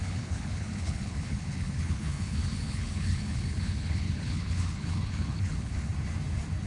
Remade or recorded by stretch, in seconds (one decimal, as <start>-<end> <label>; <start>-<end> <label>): 0.0-5.9 remade; 5.9-6.7 recorded